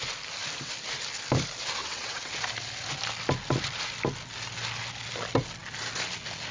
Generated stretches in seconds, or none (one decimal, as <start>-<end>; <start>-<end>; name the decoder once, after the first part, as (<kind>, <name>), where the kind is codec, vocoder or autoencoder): 1.8-2.3 (vocoder, WaveNeXt)